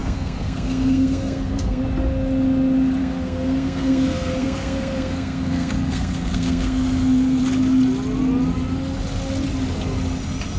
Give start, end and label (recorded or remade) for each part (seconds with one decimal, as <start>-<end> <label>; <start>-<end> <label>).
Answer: 0.0-1.8 remade; 1.8-3.0 recorded; 3.0-7.4 remade; 7.4-10.6 recorded